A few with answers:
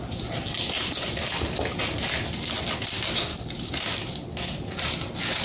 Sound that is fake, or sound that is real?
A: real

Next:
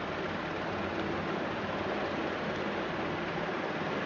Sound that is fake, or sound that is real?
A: real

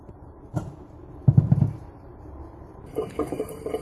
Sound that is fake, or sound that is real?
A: fake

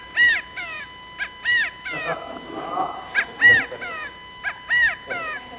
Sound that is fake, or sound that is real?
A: real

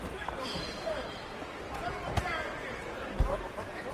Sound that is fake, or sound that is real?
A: fake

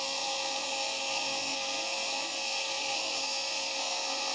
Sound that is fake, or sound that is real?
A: fake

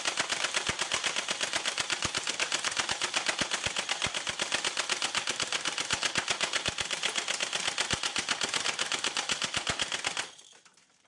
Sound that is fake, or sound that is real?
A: fake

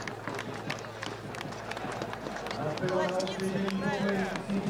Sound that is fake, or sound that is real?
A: real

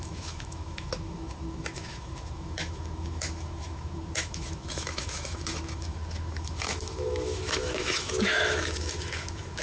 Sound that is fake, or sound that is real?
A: fake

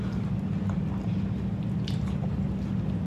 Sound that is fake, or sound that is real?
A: real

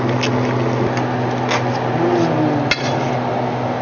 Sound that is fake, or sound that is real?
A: real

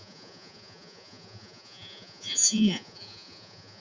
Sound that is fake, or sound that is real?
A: fake